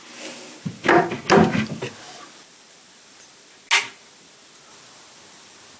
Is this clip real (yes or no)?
yes